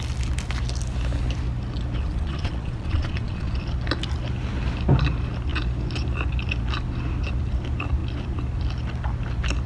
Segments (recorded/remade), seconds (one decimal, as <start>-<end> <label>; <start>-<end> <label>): 0.0-2.0 recorded; 2.0-3.5 remade; 3.5-9.7 recorded